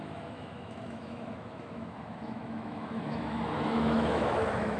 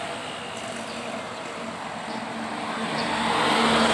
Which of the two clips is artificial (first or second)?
first